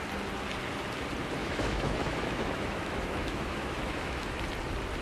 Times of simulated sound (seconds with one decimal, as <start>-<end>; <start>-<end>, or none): 1.4-4.4